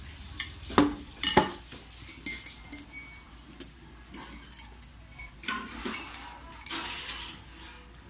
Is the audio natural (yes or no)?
yes